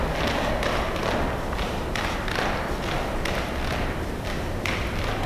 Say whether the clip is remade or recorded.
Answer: recorded